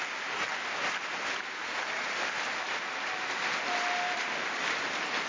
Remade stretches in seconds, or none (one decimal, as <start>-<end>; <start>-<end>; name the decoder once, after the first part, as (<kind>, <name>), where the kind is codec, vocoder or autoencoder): none